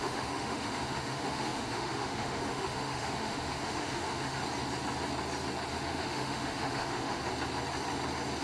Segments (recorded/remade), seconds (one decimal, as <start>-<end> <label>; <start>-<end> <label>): 0.0-4.4 remade; 4.4-5.7 recorded; 5.7-7.2 remade; 7.2-8.4 recorded